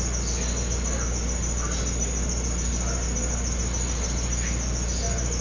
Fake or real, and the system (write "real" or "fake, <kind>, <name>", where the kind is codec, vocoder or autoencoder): real